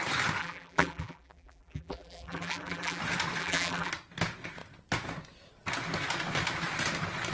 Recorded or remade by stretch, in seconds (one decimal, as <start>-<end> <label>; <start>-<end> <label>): 0.0-0.4 recorded; 0.4-3.0 remade; 3.0-3.4 recorded; 3.4-3.9 remade; 3.9-7.3 recorded